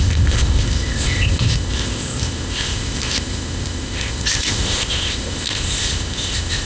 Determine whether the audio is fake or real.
fake